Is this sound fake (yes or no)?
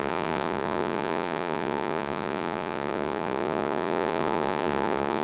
yes